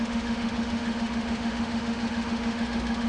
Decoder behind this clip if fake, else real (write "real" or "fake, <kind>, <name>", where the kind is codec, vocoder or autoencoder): fake, autoencoder, DAC-VAE